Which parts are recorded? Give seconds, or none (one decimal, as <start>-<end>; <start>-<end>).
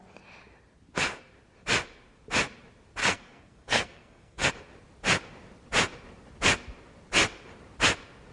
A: 0.0-3.0; 4.5-8.3